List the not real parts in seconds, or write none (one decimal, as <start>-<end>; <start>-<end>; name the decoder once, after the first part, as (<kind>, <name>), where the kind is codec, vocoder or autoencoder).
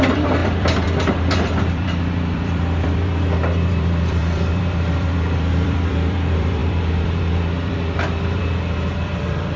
0.0-9.6 (vocoder, BigVGAN v2)